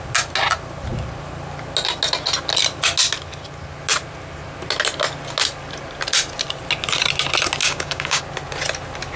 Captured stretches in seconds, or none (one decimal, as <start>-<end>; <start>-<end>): 0.0-7.6; 8.2-9.2